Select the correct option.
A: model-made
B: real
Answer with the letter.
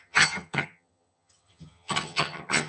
A